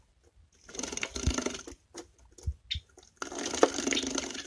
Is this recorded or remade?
recorded